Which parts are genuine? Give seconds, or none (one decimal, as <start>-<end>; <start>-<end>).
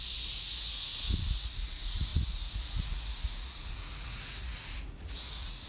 none